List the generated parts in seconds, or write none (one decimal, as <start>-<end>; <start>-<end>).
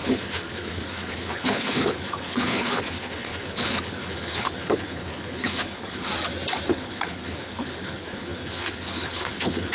0.0-6.1; 6.7-9.7